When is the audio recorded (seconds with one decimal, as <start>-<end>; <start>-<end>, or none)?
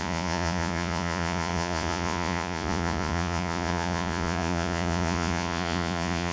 none